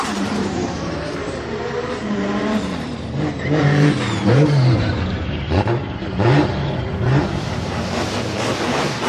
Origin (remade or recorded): remade